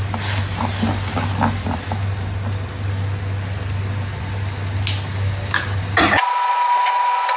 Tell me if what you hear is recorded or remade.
recorded